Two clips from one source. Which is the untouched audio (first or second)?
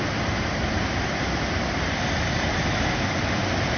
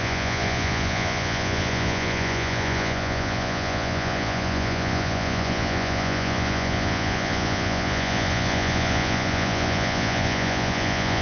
first